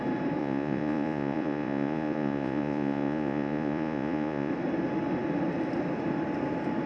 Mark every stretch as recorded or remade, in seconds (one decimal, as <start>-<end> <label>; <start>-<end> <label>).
0.0-0.4 recorded; 0.4-4.5 remade; 4.5-6.9 recorded